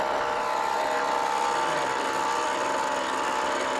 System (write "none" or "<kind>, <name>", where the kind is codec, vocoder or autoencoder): none